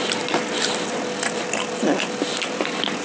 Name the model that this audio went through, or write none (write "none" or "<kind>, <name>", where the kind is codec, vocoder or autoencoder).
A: none